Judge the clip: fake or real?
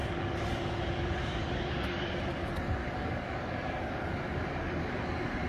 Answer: fake